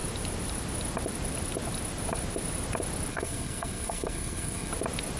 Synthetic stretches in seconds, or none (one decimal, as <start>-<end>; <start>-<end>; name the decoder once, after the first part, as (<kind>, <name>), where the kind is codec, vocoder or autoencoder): 3.1-4.7 (codec, SNAC)

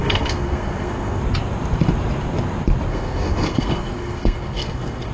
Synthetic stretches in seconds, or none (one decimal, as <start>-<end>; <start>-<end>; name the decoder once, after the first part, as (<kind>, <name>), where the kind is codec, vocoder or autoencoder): 0.0-1.2 (codec, SNAC); 2.9-5.1

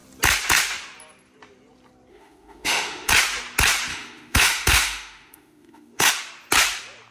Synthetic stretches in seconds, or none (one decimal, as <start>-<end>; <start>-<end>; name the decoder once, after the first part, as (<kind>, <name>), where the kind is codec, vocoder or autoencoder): 2.1-3.1 (autoencoder, DAC-VAE); 3.9-6.1